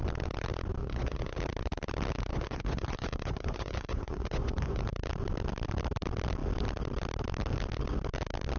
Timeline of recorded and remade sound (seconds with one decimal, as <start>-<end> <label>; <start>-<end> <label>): 0.0-0.8 recorded; 0.8-1.4 remade; 1.4-2.3 recorded; 2.3-4.8 remade; 4.8-8.6 recorded